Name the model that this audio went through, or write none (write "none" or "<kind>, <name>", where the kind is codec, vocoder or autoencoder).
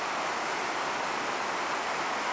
none